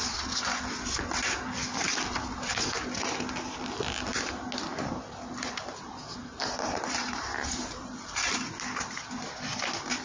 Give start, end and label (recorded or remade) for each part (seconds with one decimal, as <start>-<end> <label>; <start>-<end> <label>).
0.0-4.7 recorded; 4.7-8.4 remade; 8.4-10.0 recorded